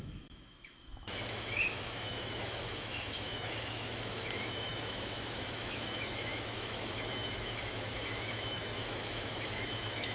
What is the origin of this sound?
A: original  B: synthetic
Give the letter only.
B